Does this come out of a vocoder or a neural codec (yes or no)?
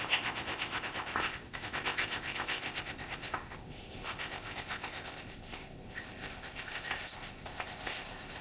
yes